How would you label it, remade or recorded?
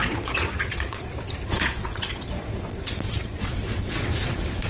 remade